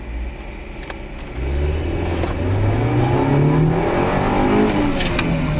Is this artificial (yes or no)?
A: no